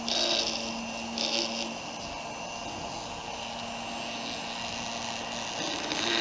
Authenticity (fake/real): real